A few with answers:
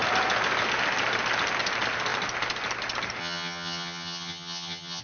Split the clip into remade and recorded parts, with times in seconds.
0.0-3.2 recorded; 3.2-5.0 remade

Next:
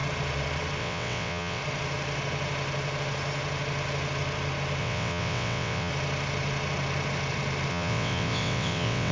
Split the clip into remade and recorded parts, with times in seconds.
0.0-0.8 recorded; 0.8-1.6 remade; 1.6-4.8 recorded; 4.8-5.9 remade; 5.9-7.7 recorded; 7.7-9.1 remade